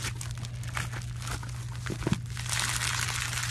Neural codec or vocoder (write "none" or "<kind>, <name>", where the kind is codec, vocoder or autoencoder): none